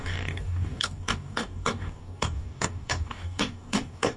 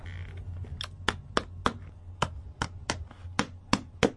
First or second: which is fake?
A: first